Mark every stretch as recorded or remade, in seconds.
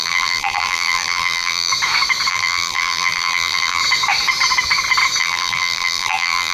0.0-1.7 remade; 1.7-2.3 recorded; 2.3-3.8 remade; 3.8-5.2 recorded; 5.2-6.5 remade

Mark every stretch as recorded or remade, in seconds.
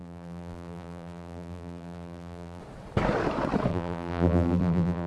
0.0-2.6 remade; 2.6-3.7 recorded; 3.7-5.1 remade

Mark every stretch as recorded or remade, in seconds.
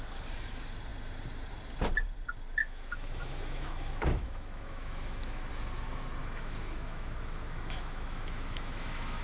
0.0-2.6 recorded; 2.6-5.5 remade; 5.5-6.2 recorded; 6.2-9.2 remade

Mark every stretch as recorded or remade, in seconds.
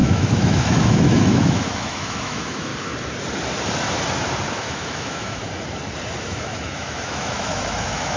0.0-2.7 remade; 2.7-4.5 recorded; 4.5-5.4 remade; 5.4-6.2 recorded; 6.2-8.2 remade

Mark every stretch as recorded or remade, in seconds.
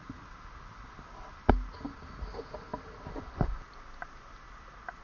0.0-5.0 recorded